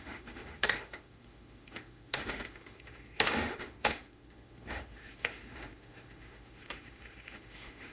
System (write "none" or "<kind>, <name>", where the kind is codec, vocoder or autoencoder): autoencoder, DAC-VAE